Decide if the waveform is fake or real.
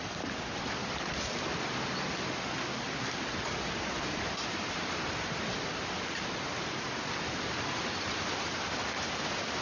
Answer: real